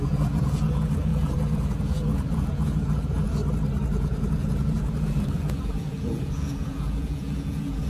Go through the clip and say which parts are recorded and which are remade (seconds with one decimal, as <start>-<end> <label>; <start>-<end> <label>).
0.0-3.4 remade; 3.4-3.9 recorded; 3.9-7.9 remade